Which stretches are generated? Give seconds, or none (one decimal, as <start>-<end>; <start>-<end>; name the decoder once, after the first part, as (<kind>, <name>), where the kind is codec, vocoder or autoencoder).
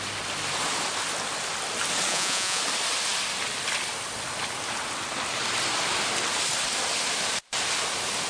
2.1-2.6 (vocoder, Vocos)